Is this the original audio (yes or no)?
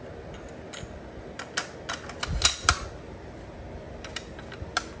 yes